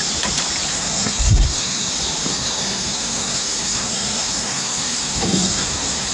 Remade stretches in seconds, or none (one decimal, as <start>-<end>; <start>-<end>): 0.7-1.9; 2.3-6.1